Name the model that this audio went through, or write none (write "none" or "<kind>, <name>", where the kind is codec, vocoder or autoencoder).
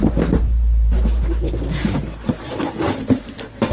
vocoder, BigVGAN v2